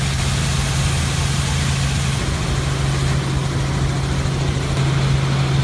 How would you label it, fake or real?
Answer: real